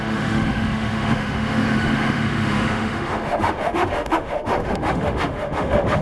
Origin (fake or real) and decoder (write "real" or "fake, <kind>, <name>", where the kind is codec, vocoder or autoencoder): fake, autoencoder, DAC-VAE